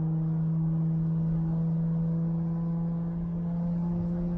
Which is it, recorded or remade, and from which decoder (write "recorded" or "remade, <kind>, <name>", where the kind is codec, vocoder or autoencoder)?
recorded